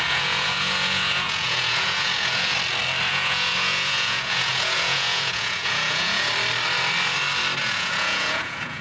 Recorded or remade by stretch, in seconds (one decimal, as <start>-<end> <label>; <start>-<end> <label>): 0.0-2.5 remade; 2.5-3.1 recorded; 3.1-6.3 remade; 6.3-7.6 recorded; 7.6-8.8 remade